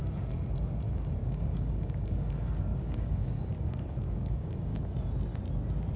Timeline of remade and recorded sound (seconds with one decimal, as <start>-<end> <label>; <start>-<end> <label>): 0.0-1.2 recorded; 1.2-4.8 remade; 4.8-6.0 recorded